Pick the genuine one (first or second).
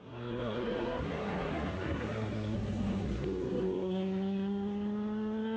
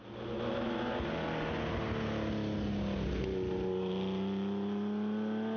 second